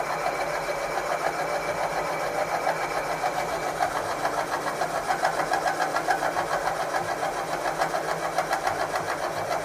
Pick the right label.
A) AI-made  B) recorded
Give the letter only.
B